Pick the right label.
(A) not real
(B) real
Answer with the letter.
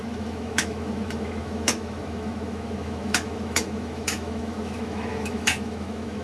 A